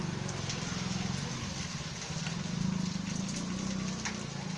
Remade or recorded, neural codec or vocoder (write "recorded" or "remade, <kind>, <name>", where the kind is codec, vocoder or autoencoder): recorded